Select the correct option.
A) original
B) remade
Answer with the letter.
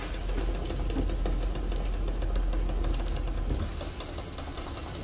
A